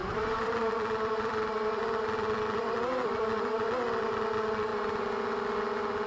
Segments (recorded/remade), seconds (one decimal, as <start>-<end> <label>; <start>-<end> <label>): 0.0-3.7 remade; 3.7-6.1 recorded